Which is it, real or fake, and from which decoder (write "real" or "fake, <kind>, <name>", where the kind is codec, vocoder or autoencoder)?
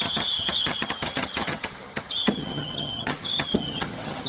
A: fake, vocoder, HiFi-GAN